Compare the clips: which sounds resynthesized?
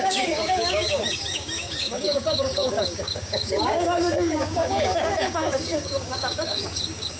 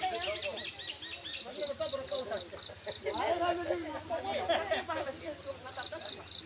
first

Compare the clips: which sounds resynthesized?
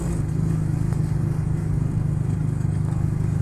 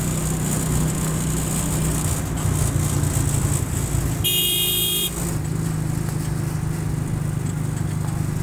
first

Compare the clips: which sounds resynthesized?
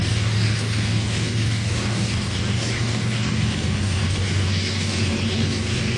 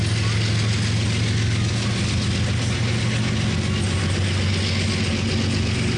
first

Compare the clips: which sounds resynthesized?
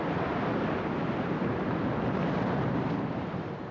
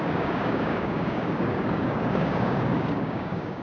second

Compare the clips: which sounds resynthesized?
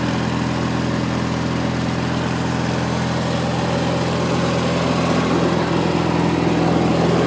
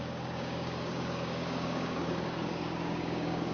second